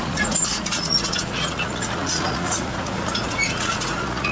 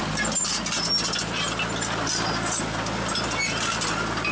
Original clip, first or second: second